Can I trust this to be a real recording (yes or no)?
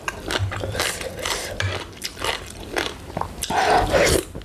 no